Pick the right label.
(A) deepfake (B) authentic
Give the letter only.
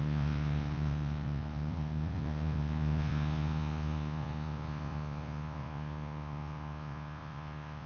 A